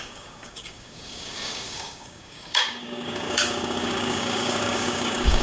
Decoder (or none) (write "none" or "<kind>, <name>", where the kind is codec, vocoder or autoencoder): codec, DAC